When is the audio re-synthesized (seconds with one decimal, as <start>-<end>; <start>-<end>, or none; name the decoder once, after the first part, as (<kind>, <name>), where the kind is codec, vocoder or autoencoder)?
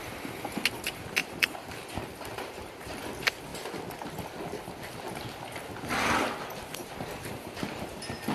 1.2-1.7 (vocoder, BigVGAN v2); 2.3-3.0; 6.8-7.7